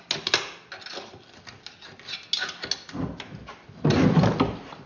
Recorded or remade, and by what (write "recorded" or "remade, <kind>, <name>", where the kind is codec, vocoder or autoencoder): recorded